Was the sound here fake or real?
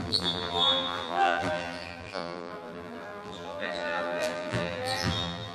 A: fake